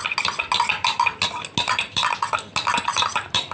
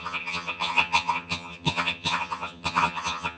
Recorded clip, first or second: first